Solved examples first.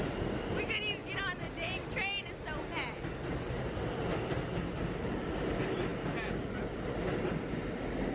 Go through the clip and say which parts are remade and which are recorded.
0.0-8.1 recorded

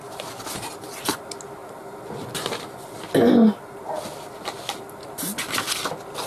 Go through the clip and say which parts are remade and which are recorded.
0.0-6.3 recorded

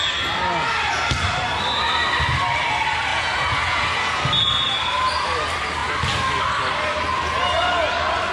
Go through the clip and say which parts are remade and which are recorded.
0.0-3.1 recorded; 3.1-4.2 remade; 4.2-8.3 recorded

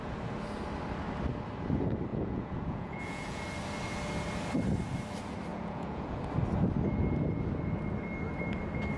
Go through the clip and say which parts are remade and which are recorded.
0.0-2.1 recorded; 2.1-3.4 remade; 3.4-5.5 recorded; 5.5-6.2 remade; 6.2-9.0 recorded